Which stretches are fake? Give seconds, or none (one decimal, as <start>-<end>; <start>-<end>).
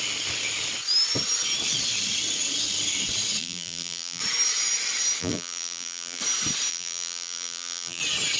3.4-4.2; 5.2-6.2; 6.7-8.0